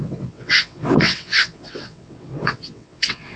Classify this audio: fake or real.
fake